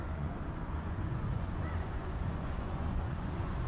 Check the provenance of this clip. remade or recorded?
remade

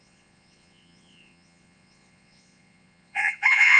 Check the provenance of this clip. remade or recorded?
remade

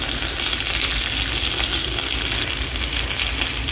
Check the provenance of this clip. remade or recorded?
recorded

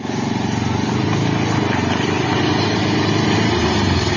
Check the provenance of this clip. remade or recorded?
recorded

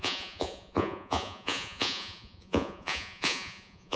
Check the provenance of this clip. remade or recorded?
remade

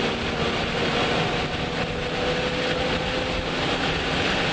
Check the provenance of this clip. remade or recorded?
recorded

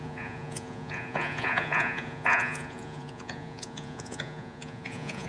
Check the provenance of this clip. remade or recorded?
remade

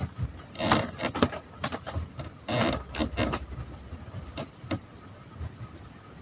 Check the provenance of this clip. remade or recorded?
recorded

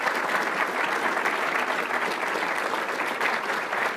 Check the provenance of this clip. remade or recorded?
recorded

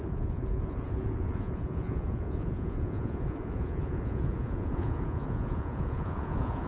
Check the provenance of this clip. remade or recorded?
remade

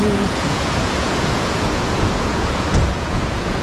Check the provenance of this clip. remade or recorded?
remade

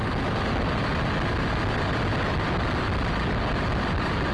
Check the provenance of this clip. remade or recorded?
recorded